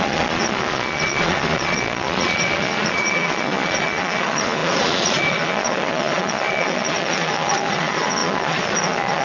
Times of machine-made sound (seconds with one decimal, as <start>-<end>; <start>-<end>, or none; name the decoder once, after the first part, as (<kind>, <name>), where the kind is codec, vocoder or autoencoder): 0.0-9.2 (vocoder, Vocos)